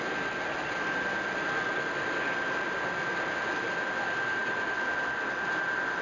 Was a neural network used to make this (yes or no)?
no